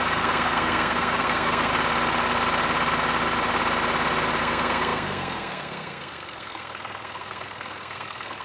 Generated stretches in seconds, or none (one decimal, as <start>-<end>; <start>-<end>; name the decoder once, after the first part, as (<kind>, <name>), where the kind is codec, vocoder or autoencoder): 0.0-1.7 (codec, SNAC); 4.4-8.4